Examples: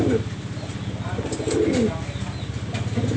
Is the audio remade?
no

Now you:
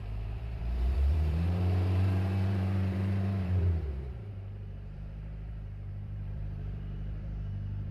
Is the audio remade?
yes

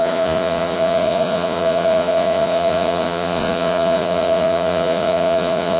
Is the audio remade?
yes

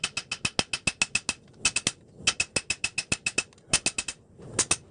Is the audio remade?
no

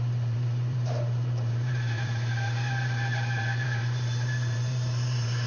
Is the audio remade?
yes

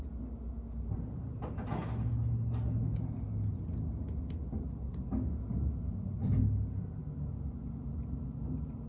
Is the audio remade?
no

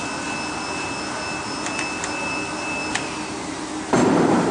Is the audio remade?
no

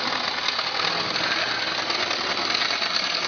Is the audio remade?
no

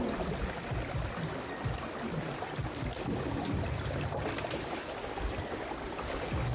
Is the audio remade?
no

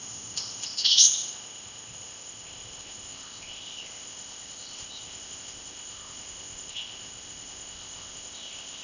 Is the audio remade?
yes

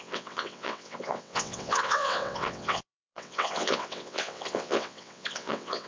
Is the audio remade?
yes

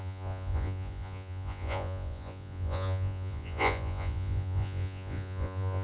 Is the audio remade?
yes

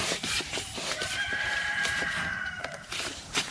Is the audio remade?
yes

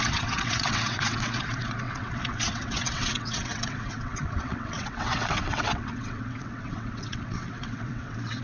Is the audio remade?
yes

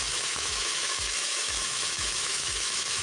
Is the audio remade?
yes